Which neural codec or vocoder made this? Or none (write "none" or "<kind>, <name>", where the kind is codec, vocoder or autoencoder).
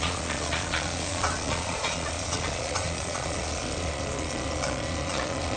vocoder, Vocos